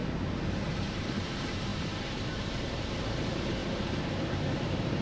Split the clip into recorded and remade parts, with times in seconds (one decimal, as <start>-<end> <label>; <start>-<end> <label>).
0.0-1.7 recorded; 1.7-2.8 remade; 2.8-3.6 recorded; 3.6-5.0 remade